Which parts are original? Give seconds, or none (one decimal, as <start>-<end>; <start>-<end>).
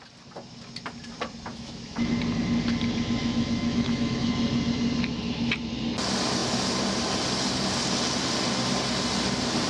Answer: 0.0-1.5; 2.1-3.2; 4.3-9.7